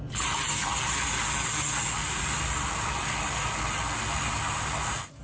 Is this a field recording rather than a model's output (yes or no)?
yes